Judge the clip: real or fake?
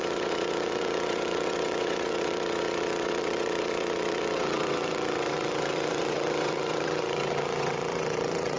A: fake